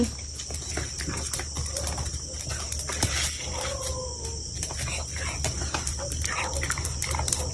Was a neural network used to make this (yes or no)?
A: no